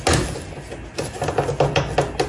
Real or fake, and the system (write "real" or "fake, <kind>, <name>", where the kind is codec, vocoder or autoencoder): real